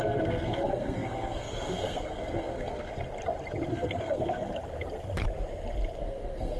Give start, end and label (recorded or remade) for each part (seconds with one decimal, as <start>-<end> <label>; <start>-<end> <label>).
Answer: 0.0-2.9 remade; 2.9-3.7 recorded; 3.7-4.5 remade; 4.5-6.0 recorded; 6.0-6.6 remade

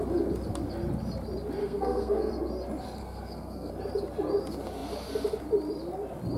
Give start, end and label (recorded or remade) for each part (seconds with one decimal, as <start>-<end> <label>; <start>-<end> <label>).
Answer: 0.0-1.6 recorded; 1.6-2.3 remade; 2.3-3.0 recorded; 3.0-3.7 remade; 3.7-6.4 recorded

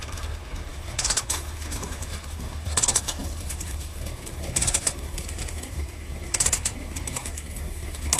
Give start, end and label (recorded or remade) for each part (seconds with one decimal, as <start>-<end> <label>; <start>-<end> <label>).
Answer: 0.0-8.2 remade

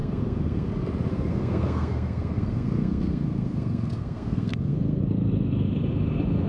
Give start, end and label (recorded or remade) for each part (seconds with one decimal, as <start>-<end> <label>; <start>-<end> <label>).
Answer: 0.0-0.7 remade; 0.7-1.1 recorded; 1.1-5.0 remade; 5.0-6.5 recorded

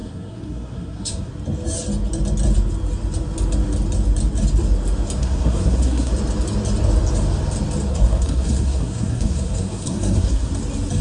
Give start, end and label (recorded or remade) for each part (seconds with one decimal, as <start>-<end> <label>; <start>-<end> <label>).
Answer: 0.0-1.3 remade; 1.3-5.2 recorded; 5.2-6.1 remade; 6.1-7.9 recorded; 7.9-10.5 remade; 10.5-11.0 recorded

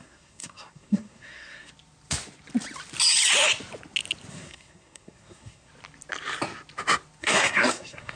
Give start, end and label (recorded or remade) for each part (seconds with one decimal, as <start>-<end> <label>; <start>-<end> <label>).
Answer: 0.0-1.7 remade; 1.7-4.3 recorded; 4.3-5.7 remade; 5.7-7.2 recorded; 7.2-8.2 remade

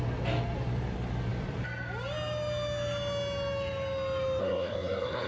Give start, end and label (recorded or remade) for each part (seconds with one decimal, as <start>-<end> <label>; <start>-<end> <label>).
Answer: 0.0-4.4 recorded; 4.4-5.3 remade